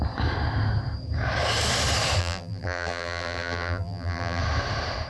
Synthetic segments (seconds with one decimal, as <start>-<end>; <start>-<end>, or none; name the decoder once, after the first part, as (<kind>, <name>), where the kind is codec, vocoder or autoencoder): 2.2-4.4 (vocoder, BigVGAN v2)